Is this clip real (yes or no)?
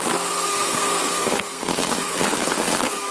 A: no